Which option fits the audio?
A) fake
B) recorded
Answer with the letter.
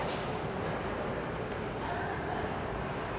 B